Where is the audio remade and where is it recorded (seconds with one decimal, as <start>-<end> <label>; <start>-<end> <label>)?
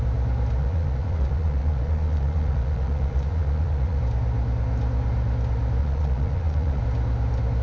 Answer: 0.0-0.6 recorded; 0.6-4.0 remade; 4.0-5.8 recorded; 5.8-6.8 remade; 6.8-7.6 recorded